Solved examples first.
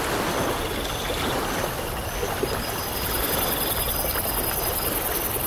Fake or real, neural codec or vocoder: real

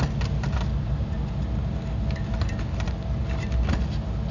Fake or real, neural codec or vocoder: real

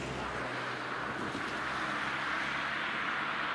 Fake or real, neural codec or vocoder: real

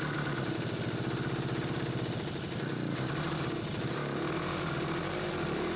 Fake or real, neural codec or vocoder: real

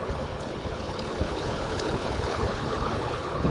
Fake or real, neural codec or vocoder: fake, codec, HILCodec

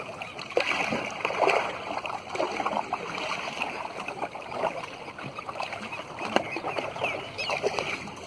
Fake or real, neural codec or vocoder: real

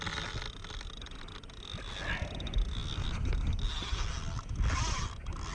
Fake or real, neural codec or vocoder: real